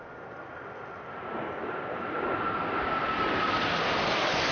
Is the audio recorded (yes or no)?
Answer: yes